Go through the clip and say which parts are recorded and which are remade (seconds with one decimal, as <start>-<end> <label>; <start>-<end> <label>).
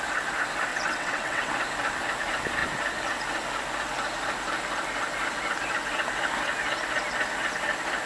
0.0-0.7 recorded; 0.7-1.5 remade; 1.5-8.1 recorded